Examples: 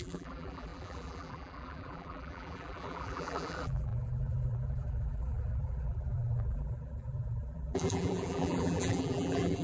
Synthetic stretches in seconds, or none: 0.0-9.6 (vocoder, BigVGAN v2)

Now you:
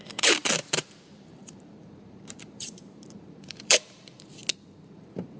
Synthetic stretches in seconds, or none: 0.0-4.4 (vocoder, BigVGAN v2); 4.9-5.4

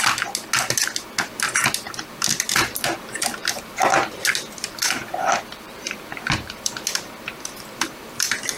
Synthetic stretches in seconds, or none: 5.2-6.7 (vocoder, BigVGAN v2)

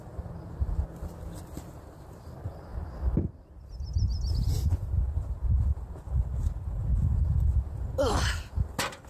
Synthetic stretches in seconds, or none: none

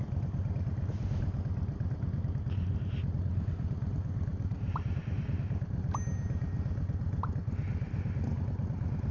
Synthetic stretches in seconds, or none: 4.3-5.1 (vocoder, BigVGAN v2)

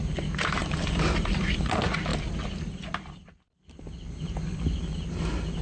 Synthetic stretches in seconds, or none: 0.6-1.7 (vocoder, BigVGAN v2)

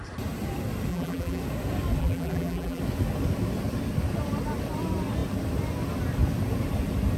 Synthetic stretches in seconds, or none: 0.9-1.4 (vocoder, BigVGAN v2); 2.0-2.8

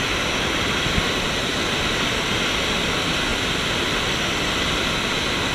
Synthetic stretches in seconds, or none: none